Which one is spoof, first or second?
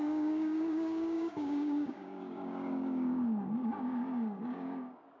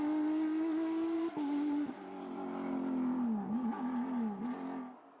first